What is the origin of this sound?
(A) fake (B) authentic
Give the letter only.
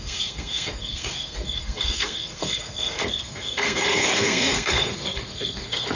A